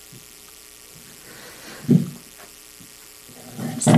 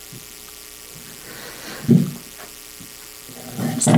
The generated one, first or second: first